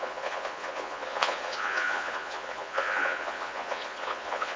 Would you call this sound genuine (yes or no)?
no